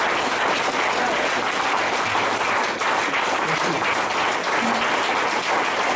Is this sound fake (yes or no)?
no